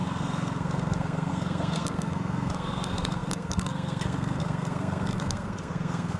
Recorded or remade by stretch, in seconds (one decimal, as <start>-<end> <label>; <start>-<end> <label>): 0.0-6.2 remade